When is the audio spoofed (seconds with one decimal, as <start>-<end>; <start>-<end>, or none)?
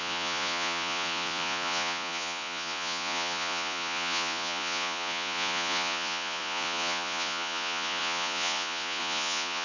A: 0.0-9.6